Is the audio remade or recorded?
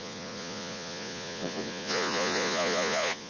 remade